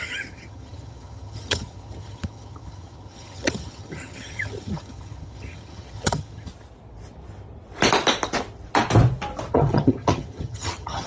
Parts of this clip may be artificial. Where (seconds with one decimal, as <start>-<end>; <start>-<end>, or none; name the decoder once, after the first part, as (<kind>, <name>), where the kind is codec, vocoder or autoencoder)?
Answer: 0.0-6.5 (vocoder, HiFi-GAN); 9.5-11.1